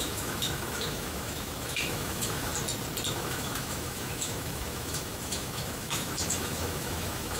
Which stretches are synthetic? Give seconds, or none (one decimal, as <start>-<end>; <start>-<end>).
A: 0.0-2.5; 3.1-7.4